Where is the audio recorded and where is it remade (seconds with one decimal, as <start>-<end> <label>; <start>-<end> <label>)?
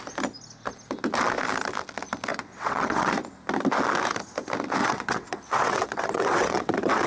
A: 0.0-2.3 recorded; 2.3-3.1 remade; 3.1-4.8 recorded; 4.8-7.1 remade